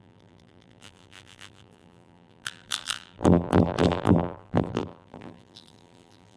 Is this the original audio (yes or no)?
no